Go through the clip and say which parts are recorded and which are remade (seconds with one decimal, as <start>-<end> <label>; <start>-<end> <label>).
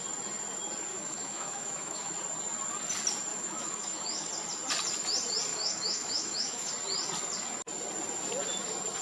0.0-0.9 recorded; 0.9-2.1 remade; 2.1-3.3 recorded; 3.3-4.3 remade; 4.3-5.5 recorded; 5.5-6.7 remade; 6.7-9.0 recorded